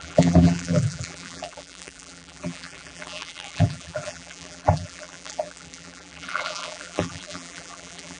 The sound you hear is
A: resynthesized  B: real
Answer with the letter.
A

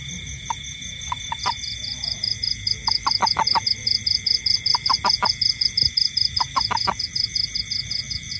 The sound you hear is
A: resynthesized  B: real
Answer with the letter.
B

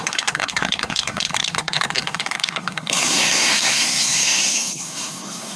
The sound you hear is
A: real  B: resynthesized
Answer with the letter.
B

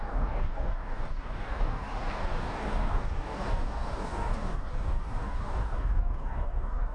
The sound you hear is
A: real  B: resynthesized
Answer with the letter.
B